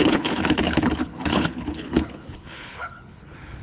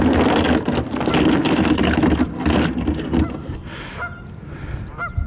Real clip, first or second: second